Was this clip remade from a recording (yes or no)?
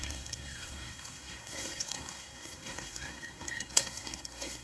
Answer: yes